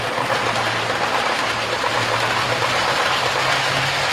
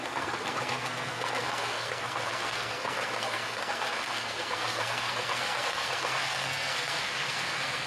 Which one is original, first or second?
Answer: first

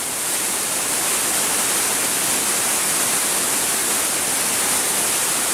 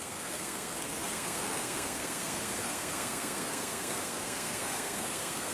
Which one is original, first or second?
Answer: first